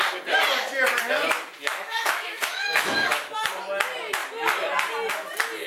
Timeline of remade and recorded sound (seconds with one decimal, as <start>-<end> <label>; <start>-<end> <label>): 0.0-1.7 recorded; 1.7-3.3 remade; 3.3-5.7 recorded